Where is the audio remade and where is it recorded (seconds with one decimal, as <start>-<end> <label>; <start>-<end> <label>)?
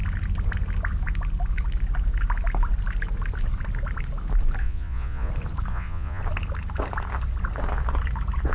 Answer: 0.0-4.6 recorded; 4.6-5.3 remade; 5.3-5.7 recorded; 5.7-6.2 remade; 6.2-8.5 recorded